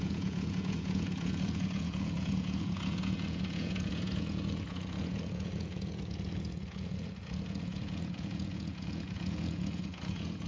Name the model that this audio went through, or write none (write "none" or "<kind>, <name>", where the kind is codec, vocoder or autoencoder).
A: vocoder, Vocos